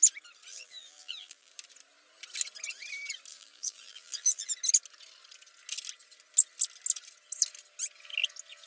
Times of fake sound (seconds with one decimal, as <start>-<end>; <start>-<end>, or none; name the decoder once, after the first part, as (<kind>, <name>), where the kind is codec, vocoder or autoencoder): 0.5-1.5 (vocoder, BigVGAN v2); 3.3-4.5